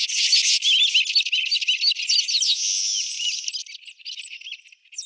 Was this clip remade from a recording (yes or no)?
no